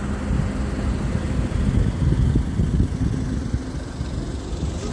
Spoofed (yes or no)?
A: no